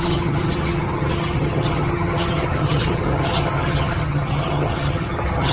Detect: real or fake fake